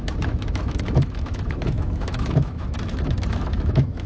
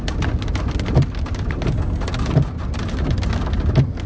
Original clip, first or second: second